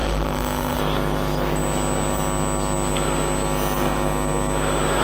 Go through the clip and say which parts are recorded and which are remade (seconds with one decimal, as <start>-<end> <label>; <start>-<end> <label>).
0.0-0.8 remade; 0.8-5.0 recorded

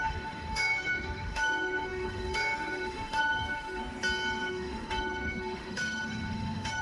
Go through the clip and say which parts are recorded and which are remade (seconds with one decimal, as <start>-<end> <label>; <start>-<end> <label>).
0.0-3.8 remade; 3.8-4.5 recorded; 4.5-6.8 remade

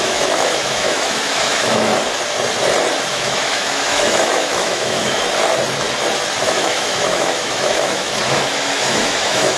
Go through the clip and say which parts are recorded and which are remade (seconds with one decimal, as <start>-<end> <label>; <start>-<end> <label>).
0.0-1.9 remade; 1.9-3.1 recorded; 3.1-5.2 remade; 5.2-6.4 recorded; 6.4-9.6 remade

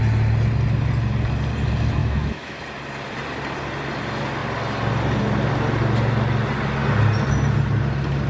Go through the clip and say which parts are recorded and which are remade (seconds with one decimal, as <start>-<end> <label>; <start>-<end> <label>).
0.0-2.0 recorded; 2.0-2.6 remade; 2.6-8.3 recorded